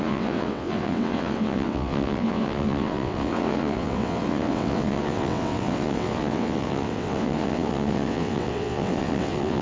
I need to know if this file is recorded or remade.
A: remade